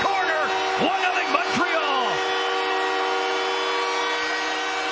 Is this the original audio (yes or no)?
yes